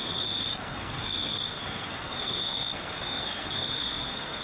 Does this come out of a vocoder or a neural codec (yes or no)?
yes